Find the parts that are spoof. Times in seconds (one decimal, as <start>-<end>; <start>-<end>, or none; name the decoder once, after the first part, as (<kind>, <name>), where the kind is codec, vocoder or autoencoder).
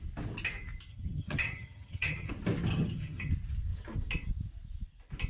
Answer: 0.9-2.3 (vocoder, HiFi-GAN); 2.7-3.3